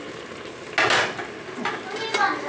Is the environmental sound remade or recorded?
recorded